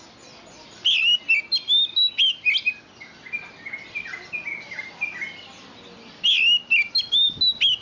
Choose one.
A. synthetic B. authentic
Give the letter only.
B